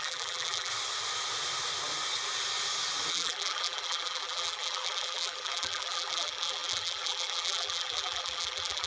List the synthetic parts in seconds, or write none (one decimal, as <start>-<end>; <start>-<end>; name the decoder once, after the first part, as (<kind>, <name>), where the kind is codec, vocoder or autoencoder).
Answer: 0.0-0.7 (vocoder, BigVGAN v2); 3.1-8.9